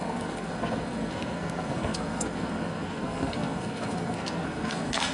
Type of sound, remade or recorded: remade